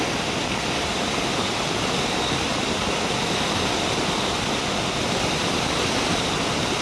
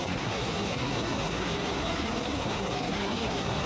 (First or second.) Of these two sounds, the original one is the first